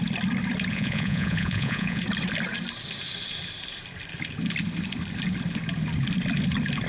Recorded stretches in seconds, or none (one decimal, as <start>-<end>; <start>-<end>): 0.0-0.7; 2.0-6.9

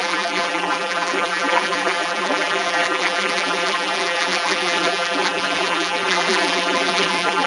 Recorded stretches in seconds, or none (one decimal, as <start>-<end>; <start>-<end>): none

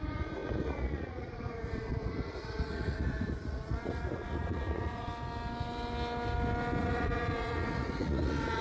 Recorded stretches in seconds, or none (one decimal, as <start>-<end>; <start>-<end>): 5.1-6.8

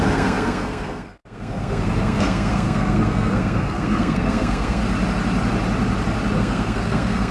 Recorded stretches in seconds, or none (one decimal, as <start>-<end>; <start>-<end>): 4.8-6.4

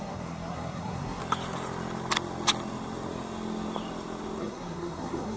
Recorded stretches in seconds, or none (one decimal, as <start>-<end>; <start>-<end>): 1.2-4.4

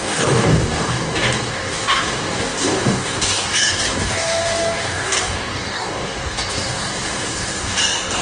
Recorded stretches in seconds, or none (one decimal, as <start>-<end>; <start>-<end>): none

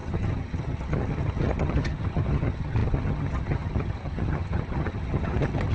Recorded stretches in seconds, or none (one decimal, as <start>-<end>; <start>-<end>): none

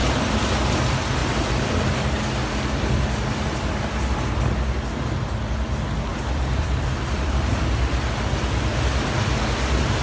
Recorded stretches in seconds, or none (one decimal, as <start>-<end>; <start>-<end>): 0.7-1.2; 4.2-6.1; 7.6-10.0